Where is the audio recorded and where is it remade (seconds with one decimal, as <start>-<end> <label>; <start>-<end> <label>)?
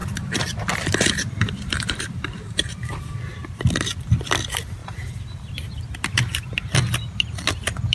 0.0-3.0 remade; 3.0-4.8 recorded; 4.8-5.8 remade; 5.8-7.9 recorded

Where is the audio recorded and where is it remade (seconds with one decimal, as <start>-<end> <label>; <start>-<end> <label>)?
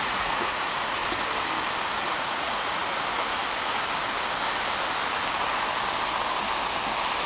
0.0-1.0 remade; 1.0-2.1 recorded; 2.1-2.8 remade; 2.8-7.3 recorded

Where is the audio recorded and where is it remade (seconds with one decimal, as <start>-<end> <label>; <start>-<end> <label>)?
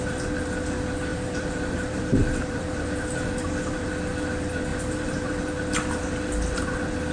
0.0-1.1 recorded; 1.1-3.9 remade; 3.9-4.7 recorded; 4.7-5.5 remade; 5.5-7.1 recorded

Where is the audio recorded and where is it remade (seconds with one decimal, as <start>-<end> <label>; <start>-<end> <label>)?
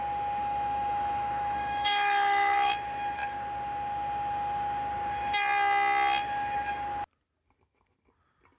0.0-0.4 recorded; 0.4-2.7 remade; 2.7-8.6 recorded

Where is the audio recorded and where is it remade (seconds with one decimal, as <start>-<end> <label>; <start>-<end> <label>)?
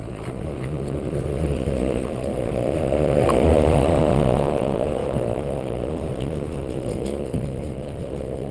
0.0-8.5 remade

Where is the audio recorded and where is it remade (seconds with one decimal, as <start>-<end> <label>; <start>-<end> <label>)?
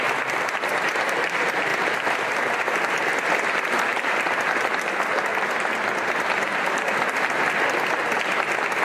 0.0-1.7 recorded; 1.7-2.4 remade; 2.4-8.8 recorded